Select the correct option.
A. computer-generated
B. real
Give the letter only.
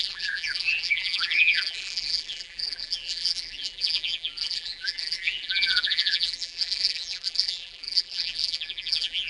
A